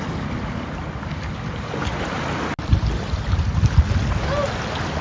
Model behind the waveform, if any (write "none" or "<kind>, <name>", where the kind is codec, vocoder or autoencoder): none